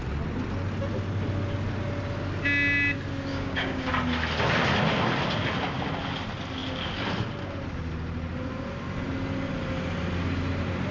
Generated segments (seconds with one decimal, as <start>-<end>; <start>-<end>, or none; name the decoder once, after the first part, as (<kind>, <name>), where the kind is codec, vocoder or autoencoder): 3.3-3.9 (codec, DAC)